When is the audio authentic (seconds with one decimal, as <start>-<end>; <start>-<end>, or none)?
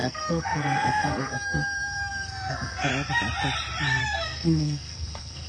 2.9-4.0